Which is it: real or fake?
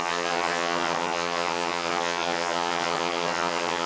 fake